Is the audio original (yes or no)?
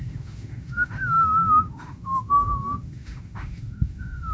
no